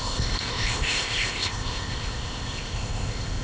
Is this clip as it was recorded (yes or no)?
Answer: no